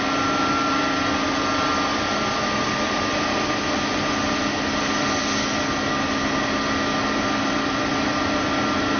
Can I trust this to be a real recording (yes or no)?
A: yes